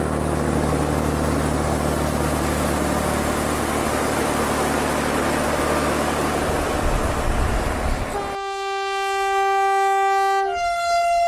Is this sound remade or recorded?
recorded